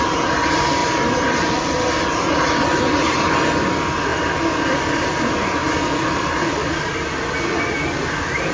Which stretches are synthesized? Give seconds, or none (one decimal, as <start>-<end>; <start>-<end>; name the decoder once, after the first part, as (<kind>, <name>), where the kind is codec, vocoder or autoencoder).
0.8-2.8 (vocoder, BigVGAN v2); 5.6-6.3